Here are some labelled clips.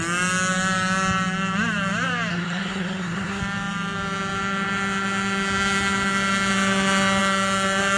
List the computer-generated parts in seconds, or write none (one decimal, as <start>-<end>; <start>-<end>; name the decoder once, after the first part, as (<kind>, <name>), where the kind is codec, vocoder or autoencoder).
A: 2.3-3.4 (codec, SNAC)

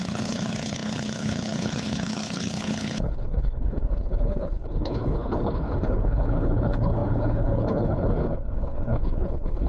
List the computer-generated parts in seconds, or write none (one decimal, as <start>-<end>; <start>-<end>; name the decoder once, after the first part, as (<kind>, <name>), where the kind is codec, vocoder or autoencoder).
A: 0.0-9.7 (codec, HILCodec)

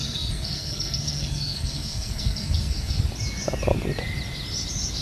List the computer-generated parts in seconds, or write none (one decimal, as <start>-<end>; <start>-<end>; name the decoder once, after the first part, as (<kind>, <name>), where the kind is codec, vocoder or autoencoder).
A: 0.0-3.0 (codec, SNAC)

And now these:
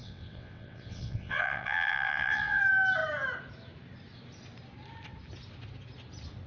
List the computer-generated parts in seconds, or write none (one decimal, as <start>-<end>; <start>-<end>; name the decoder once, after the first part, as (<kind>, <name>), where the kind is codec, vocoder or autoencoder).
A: 0.0-2.6 (vocoder, WaveNeXt)

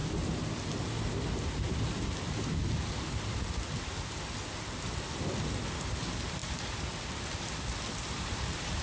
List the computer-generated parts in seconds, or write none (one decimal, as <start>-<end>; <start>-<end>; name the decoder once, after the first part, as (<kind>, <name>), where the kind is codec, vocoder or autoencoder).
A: none

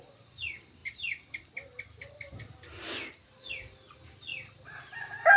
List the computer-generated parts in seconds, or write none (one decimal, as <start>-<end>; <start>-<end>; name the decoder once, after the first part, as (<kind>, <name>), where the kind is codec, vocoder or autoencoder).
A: 0.8-2.9 (vocoder, BigVGAN v2); 4.3-4.8

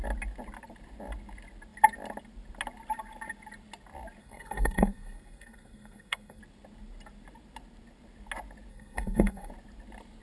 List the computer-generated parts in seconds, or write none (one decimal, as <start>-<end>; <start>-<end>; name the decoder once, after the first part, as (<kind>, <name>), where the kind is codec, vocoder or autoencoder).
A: 4.2-6.4 (codec, SNAC); 8.7-9.5

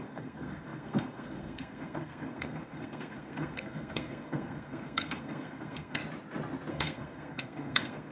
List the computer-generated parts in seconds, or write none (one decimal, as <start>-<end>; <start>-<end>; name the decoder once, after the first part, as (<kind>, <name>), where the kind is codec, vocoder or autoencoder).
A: 0.0-6.0 (codec, SNAC); 6.7-8.1